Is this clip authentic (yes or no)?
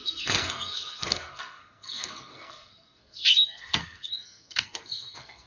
no